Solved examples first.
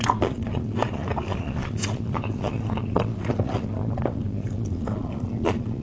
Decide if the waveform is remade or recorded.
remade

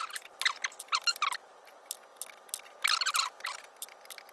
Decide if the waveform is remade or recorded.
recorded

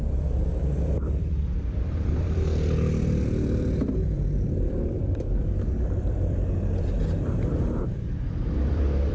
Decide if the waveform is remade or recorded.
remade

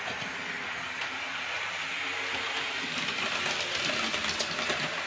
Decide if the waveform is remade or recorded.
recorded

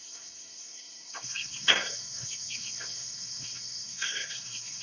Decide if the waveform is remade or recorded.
remade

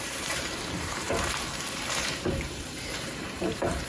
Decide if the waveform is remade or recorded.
remade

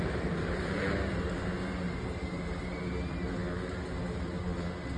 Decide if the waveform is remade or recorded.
recorded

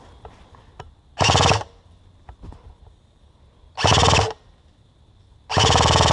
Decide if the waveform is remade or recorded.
recorded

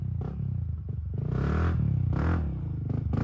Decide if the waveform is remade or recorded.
recorded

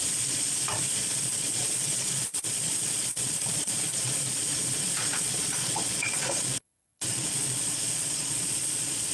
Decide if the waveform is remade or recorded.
remade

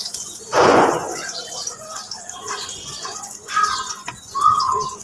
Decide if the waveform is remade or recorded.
remade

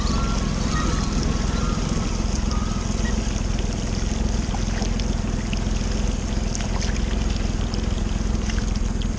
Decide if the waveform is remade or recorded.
recorded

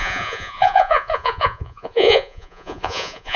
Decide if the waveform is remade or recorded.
remade